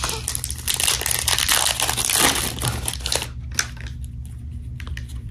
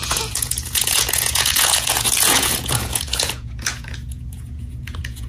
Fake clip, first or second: second